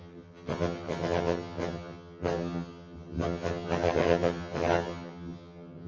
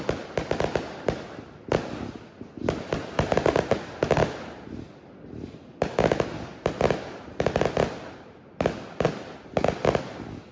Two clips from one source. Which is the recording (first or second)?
second